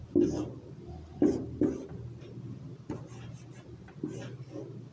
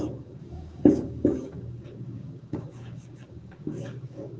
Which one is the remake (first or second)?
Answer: second